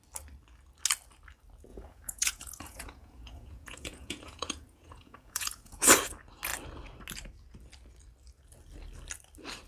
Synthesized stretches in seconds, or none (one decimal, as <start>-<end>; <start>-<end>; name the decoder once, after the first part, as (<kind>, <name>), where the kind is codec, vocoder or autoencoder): 1.7-5.9 (vocoder, Vocos)